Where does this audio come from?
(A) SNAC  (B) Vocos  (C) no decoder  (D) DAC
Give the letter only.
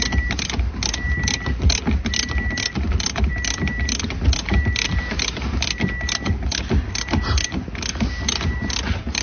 C